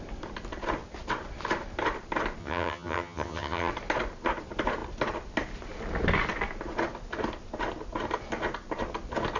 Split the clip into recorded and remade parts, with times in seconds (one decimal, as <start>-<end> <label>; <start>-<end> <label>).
0.0-2.4 recorded; 2.4-3.7 remade; 3.7-9.4 recorded